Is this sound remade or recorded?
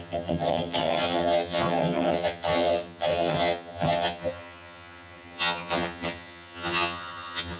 remade